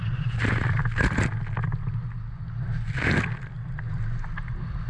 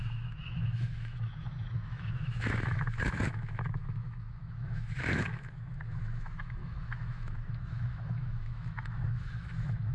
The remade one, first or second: second